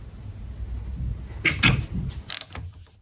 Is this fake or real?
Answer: real